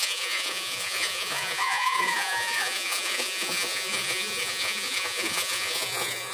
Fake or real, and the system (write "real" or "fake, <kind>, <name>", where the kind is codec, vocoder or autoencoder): fake, vocoder, Vocos